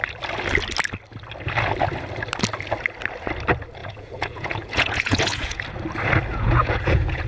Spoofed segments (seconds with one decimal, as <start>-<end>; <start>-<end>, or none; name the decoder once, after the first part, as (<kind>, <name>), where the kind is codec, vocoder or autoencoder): 3.8-5.6 (vocoder, Vocos); 6.3-7.3